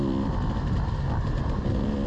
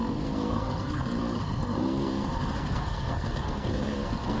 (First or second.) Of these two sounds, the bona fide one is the first